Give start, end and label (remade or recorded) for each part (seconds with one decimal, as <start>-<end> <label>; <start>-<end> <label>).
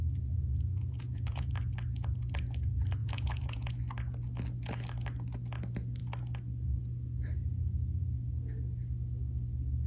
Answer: 0.0-1.5 remade; 1.5-3.0 recorded; 3.0-3.7 remade; 3.7-9.9 recorded